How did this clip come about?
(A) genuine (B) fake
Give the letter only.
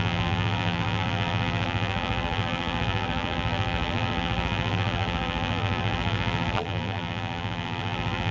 B